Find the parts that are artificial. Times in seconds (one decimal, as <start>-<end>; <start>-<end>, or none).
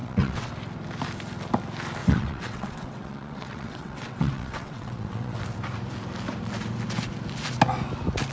0.0-0.5; 2.0-5.4